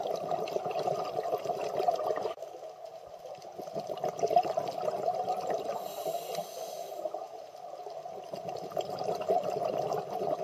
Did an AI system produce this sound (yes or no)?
no